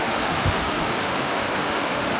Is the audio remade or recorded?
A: remade